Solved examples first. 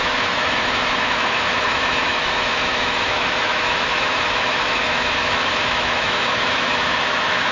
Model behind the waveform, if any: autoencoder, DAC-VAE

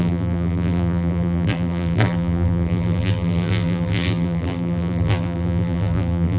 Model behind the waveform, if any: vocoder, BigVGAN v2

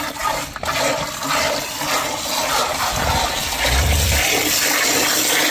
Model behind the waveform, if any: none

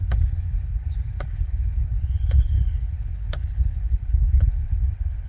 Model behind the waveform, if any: codec, HILCodec